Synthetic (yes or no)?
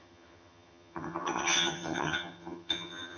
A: yes